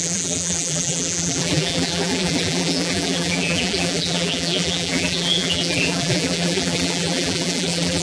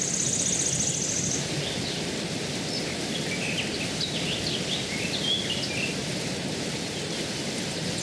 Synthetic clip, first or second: first